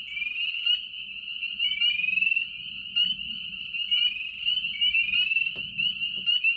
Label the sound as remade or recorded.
recorded